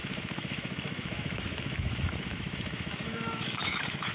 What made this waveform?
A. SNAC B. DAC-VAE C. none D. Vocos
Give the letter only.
B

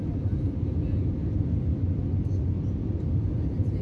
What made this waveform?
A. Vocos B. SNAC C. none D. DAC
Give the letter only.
C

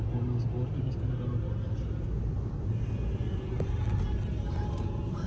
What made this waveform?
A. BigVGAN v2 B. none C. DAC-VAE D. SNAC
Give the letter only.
B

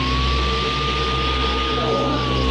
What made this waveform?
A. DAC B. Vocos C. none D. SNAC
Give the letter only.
C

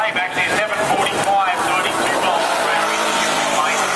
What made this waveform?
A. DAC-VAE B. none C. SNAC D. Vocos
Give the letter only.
B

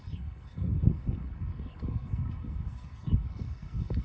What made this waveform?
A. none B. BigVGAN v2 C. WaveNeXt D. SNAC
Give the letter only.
D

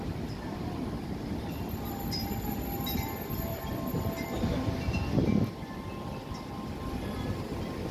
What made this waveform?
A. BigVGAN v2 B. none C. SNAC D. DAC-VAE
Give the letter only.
A